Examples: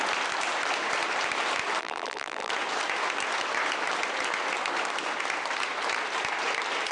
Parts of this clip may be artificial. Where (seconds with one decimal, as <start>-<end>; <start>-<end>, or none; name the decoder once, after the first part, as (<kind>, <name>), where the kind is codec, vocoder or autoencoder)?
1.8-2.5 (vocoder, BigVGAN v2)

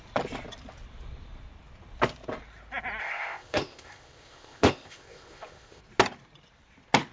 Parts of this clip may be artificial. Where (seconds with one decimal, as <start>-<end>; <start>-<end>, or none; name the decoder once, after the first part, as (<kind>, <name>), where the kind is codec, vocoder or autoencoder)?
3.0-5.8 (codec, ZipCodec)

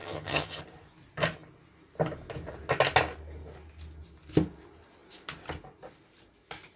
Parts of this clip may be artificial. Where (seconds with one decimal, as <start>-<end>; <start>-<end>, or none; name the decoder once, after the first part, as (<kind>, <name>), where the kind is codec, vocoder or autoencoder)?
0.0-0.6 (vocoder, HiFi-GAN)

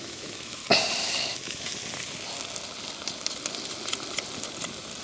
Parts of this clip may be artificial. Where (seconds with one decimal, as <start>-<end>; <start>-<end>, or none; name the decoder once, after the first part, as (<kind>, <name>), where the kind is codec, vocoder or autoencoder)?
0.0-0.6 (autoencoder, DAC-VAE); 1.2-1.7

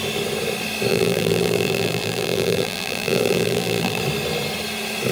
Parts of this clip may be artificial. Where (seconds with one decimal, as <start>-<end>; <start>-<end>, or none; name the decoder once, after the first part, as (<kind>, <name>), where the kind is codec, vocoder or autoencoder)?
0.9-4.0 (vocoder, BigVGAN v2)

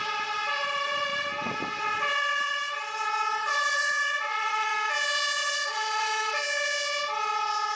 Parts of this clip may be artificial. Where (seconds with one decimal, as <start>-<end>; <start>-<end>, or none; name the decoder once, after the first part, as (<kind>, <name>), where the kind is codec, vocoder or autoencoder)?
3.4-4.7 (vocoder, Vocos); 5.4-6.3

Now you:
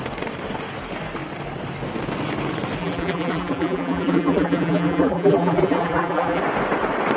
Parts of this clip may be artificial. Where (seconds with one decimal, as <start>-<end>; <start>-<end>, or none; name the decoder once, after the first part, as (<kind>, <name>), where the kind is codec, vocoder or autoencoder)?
2.8-6.4 (vocoder, BigVGAN v2)

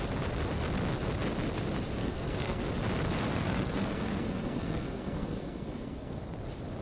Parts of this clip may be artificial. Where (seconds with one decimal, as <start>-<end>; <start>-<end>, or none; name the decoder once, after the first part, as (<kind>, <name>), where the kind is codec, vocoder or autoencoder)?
2.0-2.6 (codec, SNAC); 3.3-6.2